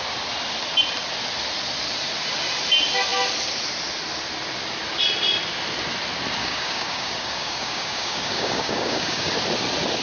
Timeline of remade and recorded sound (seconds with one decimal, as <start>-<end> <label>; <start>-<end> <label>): 0.0-6.4 recorded; 6.4-9.3 remade; 9.3-10.0 recorded